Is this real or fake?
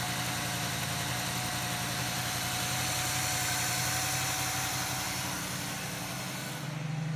real